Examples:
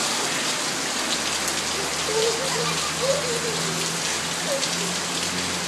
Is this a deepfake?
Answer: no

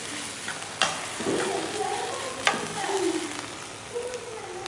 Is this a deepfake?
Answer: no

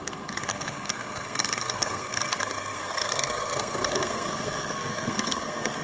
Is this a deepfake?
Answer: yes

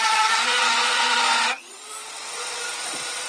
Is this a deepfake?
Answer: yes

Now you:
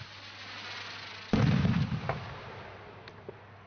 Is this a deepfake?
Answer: no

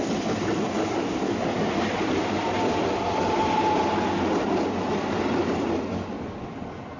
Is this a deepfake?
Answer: no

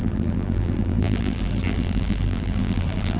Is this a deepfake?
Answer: yes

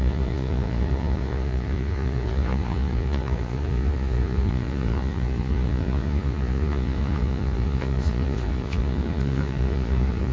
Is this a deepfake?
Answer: yes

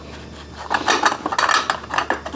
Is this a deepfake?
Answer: no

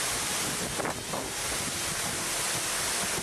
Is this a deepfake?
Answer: no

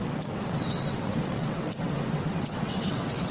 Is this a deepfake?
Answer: yes